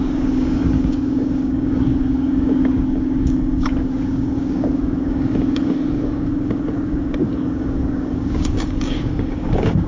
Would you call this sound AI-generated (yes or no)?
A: yes